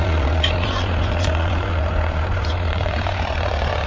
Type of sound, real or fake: fake